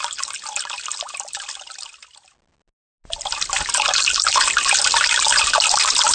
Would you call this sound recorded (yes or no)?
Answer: yes